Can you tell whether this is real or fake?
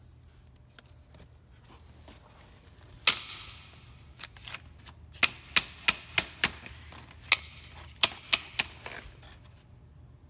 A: real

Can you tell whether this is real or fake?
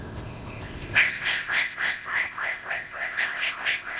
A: fake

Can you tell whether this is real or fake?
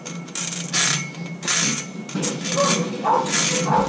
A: real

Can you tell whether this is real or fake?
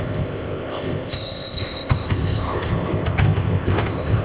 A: fake